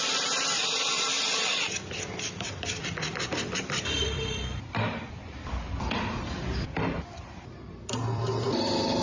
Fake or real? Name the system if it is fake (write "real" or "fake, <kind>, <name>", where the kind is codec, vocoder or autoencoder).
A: fake, vocoder, BigVGAN v2